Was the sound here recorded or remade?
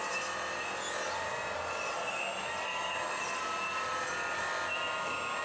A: recorded